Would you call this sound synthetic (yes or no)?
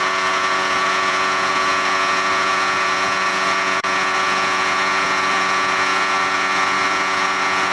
yes